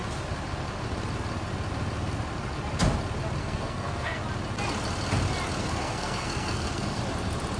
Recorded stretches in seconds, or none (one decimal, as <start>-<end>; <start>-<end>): 0.0-3.4; 4.2-5.6; 7.0-7.6